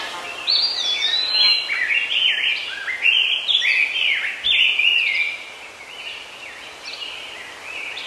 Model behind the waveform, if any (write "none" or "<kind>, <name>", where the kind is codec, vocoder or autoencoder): none